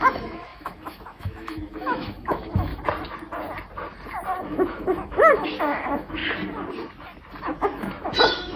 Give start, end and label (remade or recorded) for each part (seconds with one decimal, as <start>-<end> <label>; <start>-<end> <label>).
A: 0.0-2.7 remade; 2.7-4.4 recorded; 4.4-6.2 remade; 6.2-7.4 recorded; 7.4-8.6 remade